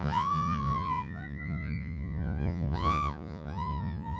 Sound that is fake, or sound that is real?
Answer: fake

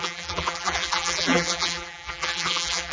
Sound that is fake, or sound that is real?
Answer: fake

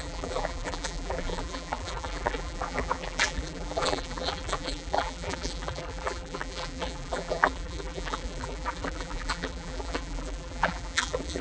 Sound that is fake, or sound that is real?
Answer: fake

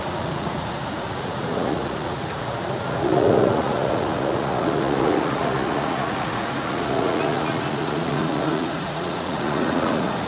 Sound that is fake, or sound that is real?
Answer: fake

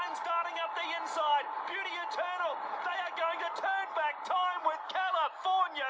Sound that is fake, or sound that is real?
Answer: real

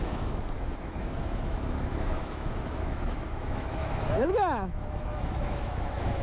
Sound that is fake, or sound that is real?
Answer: fake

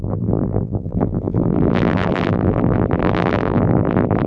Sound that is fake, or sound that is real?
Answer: fake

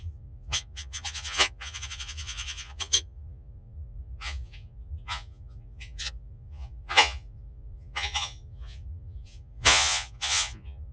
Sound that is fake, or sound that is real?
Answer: fake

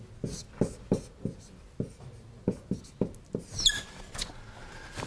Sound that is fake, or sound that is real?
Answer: real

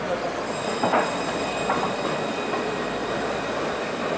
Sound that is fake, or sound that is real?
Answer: real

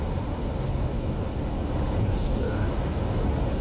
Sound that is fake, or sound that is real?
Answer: real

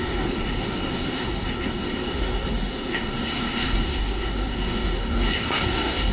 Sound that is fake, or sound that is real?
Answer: fake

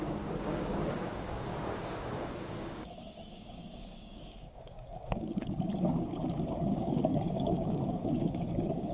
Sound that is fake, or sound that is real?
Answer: fake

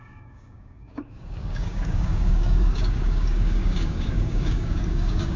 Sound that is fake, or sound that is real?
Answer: fake